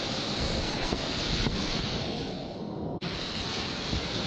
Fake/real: fake